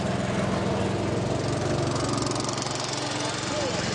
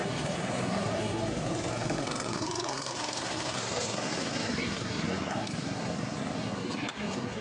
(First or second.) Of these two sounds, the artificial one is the second